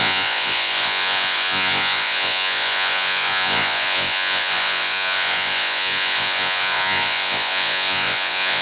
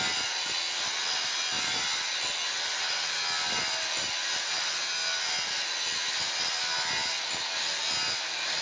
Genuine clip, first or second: second